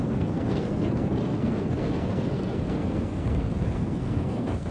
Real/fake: fake